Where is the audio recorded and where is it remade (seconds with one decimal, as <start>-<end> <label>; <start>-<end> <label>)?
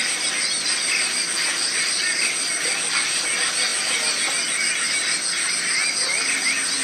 0.0-6.8 recorded